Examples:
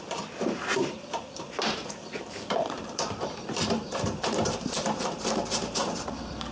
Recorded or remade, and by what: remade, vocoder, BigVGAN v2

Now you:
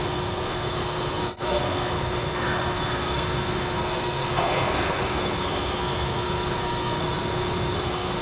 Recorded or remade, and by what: remade, codec, SNAC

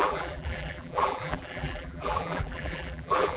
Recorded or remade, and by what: remade, vocoder, BigVGAN v2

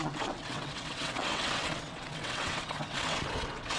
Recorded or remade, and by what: remade, vocoder, WaveNeXt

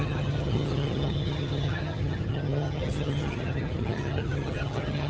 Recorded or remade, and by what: remade, vocoder, HiFi-GAN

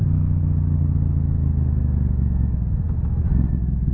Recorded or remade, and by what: recorded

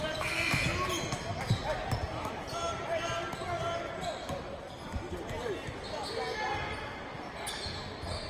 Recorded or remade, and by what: recorded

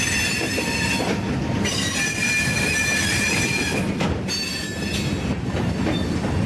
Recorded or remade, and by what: recorded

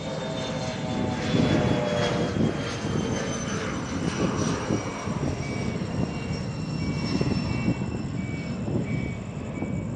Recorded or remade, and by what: recorded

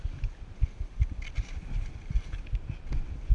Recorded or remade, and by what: recorded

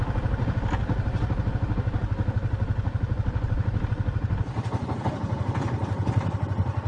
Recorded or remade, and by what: recorded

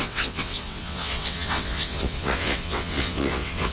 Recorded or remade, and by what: remade, vocoder, WaveNeXt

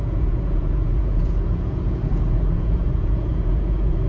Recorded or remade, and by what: remade, vocoder, Vocos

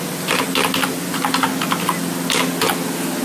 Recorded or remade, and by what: recorded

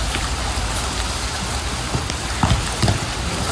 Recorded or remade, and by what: recorded